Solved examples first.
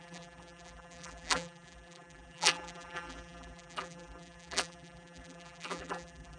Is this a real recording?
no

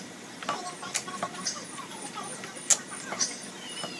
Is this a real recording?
yes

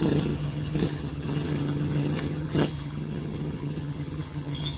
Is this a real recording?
no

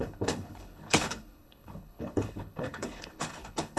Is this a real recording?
no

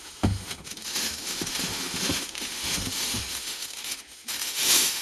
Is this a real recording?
no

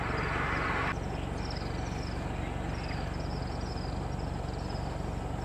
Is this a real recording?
yes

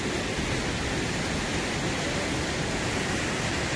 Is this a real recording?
yes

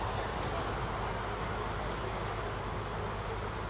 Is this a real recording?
yes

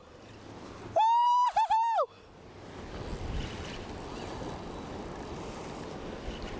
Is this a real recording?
yes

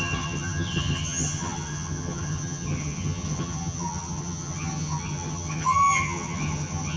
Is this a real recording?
no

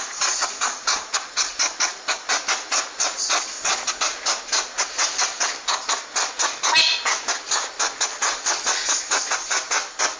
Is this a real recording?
yes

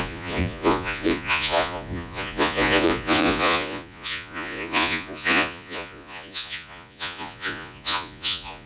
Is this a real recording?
no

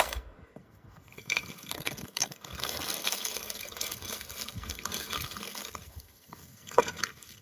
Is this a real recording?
no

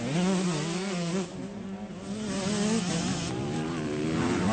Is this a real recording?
yes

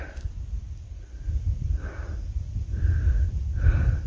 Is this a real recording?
no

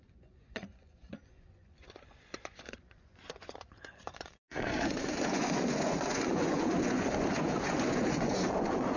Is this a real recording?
no